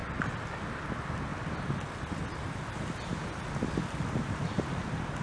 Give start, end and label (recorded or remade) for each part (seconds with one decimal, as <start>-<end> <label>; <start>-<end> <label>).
0.0-5.2 recorded